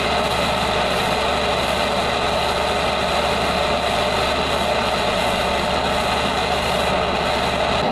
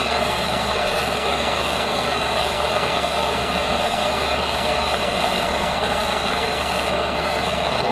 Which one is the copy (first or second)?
second